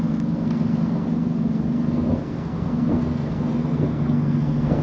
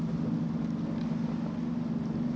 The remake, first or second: first